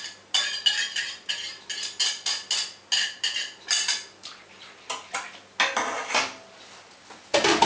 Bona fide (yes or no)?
yes